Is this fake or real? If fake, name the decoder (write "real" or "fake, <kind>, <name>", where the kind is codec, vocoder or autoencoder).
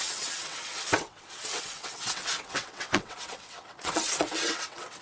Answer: fake, vocoder, WaveNeXt